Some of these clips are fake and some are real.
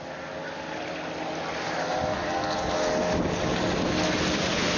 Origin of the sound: real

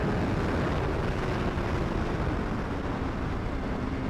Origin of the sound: real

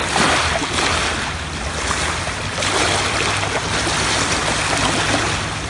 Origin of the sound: real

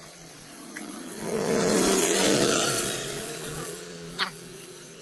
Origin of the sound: fake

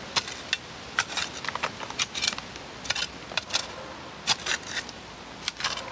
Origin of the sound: real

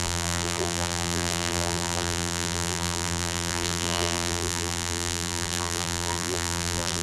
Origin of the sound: fake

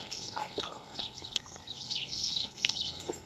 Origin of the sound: fake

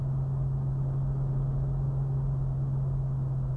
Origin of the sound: real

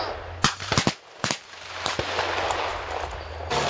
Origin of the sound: real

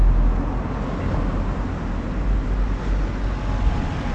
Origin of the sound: real